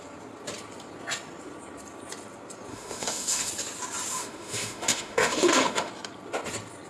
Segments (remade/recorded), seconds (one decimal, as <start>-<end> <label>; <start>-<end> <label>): 0.0-2.7 recorded; 2.7-3.5 remade; 3.5-4.1 recorded; 4.1-5.9 remade; 5.9-6.9 recorded